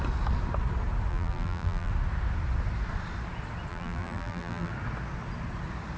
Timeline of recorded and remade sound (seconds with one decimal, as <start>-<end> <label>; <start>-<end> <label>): 0.0-1.1 recorded; 1.1-1.9 remade; 1.9-3.7 recorded; 3.7-4.7 remade; 4.7-6.0 recorded